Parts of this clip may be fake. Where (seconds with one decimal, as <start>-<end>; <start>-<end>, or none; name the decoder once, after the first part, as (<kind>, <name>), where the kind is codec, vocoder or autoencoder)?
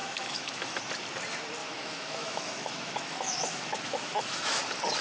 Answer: 0.0-0.8 (autoencoder, DAC-VAE); 1.6-4.6